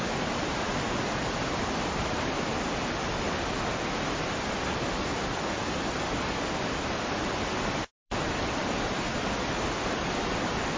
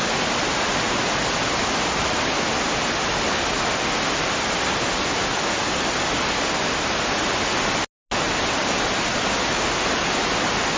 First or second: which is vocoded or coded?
first